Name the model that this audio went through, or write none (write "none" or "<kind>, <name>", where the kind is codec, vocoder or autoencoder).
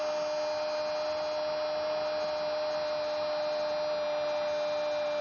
none